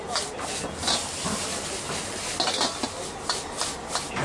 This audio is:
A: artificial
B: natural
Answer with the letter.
B